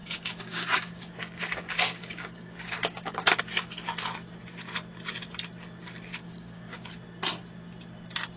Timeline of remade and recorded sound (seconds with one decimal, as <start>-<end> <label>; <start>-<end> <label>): 0.0-3.4 remade; 3.4-6.1 recorded; 6.1-6.9 remade; 6.9-8.4 recorded